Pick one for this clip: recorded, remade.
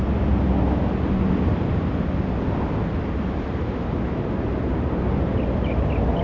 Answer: recorded